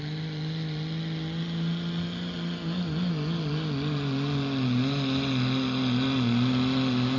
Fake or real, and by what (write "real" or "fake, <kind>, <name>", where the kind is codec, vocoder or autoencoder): real